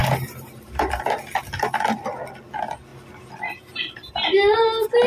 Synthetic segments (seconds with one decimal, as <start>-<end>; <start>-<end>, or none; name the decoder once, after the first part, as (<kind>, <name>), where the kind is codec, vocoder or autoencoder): 0.0-0.9 (vocoder, BigVGAN v2); 2.9-4.1